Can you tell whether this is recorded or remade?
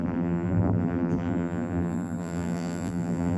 remade